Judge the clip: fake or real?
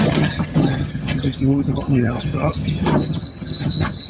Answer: fake